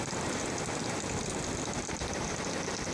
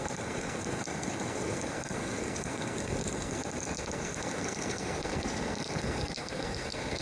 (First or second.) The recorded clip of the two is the first